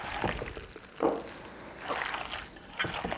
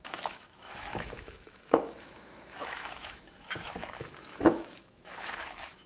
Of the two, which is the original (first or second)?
first